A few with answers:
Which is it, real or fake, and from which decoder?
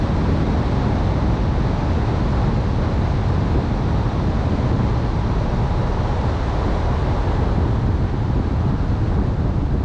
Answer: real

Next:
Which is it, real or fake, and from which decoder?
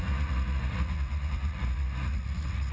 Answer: fake, vocoder, Vocos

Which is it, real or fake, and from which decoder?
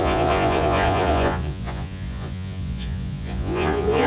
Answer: fake, vocoder, Vocos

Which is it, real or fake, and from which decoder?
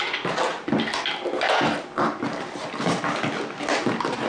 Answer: real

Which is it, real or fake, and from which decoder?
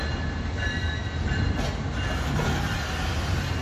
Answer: real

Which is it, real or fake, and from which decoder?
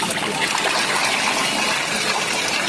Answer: real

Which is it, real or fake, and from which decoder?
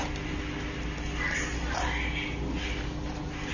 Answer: real